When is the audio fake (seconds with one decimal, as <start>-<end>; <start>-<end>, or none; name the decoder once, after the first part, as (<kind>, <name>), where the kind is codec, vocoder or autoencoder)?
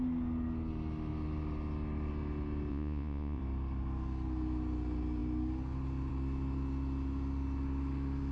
2.7-3.4 (vocoder, Vocos)